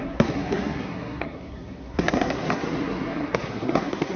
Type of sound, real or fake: fake